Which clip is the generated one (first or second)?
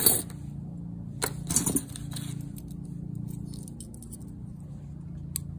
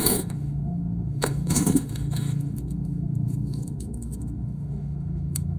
second